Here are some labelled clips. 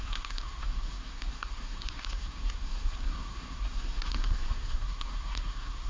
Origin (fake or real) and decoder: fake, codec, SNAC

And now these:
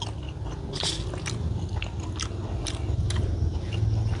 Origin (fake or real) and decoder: real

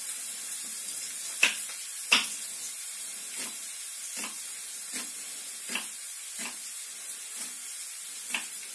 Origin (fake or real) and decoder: real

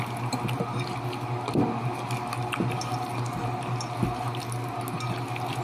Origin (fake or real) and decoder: real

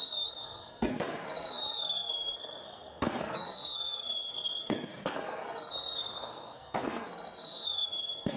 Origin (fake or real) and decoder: fake, codec, SNAC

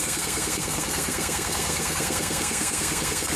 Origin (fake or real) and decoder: fake, codec, SNAC